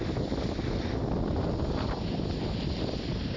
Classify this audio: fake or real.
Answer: real